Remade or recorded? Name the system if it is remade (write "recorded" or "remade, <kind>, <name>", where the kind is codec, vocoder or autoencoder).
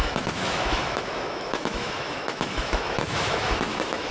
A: remade, autoencoder, DAC-VAE